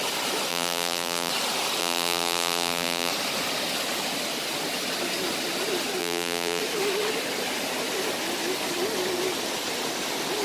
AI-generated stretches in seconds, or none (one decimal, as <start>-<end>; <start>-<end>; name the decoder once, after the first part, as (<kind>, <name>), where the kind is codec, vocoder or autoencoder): 0.5-1.3 (vocoder, BigVGAN v2); 1.8-3.1; 6.0-6.6